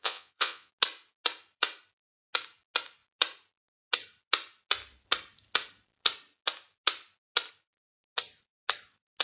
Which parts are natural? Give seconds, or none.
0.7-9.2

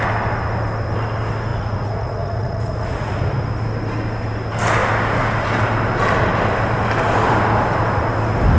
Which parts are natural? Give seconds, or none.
0.0-1.5; 3.2-8.6